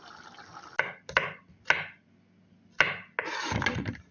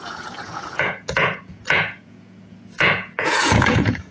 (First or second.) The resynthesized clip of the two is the second